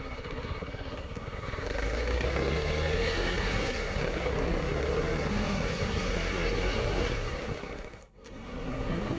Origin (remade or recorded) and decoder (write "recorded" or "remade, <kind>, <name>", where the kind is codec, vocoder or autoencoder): remade, codec, SNAC